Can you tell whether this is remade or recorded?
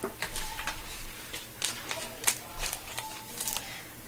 remade